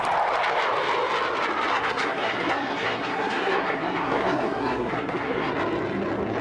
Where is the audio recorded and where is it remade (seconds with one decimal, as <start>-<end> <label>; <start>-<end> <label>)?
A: 0.0-1.7 recorded; 1.7-5.5 remade; 5.5-6.4 recorded